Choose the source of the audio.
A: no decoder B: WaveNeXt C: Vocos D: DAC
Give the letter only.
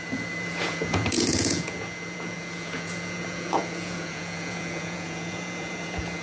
C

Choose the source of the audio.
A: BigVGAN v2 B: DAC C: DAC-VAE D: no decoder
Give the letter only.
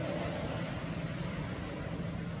D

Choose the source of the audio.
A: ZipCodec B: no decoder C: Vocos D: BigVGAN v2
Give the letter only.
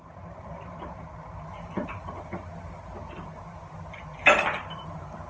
B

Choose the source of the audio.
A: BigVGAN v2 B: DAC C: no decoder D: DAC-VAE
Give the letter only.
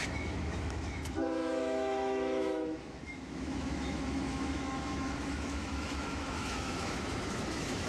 D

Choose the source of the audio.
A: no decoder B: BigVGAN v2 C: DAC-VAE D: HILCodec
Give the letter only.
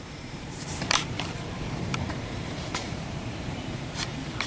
B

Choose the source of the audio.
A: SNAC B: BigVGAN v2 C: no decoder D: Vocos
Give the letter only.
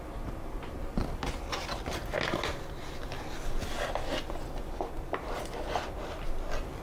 C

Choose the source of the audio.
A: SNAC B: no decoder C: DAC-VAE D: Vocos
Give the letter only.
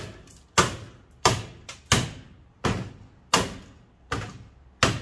B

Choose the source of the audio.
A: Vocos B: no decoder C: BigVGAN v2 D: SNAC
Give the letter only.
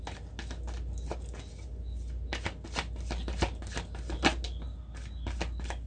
B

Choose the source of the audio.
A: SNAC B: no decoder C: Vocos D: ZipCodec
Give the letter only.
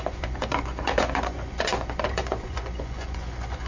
C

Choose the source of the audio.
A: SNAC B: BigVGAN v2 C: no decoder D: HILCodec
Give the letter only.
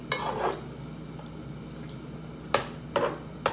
C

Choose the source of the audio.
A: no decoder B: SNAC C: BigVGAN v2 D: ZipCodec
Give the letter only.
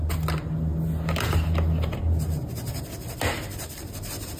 A